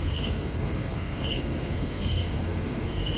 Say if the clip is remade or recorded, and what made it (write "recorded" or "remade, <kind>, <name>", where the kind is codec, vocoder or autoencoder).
remade, codec, SNAC